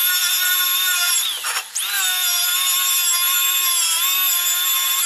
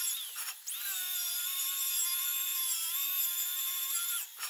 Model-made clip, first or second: second